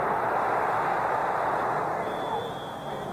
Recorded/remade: recorded